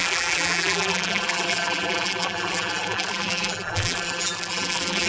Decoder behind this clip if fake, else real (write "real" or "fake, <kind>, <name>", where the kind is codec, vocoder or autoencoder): fake, vocoder, BigVGAN v2